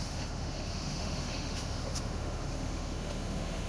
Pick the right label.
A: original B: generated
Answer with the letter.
B